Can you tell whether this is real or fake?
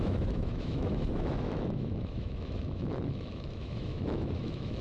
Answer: fake